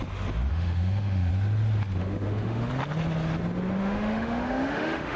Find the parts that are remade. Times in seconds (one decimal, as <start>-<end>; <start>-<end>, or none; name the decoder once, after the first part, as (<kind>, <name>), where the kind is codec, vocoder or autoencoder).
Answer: 0.5-1.3 (autoencoder, DAC-VAE); 2.0-2.7; 3.8-5.2